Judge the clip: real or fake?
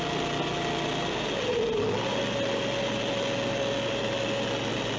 real